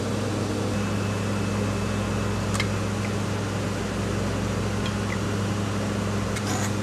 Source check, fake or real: real